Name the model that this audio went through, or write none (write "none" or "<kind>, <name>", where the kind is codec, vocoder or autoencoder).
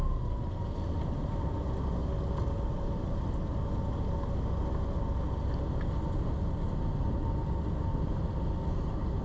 none